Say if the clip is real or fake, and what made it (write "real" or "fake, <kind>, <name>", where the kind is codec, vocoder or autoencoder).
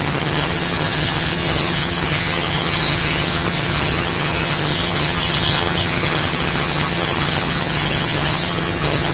fake, vocoder, HiFi-GAN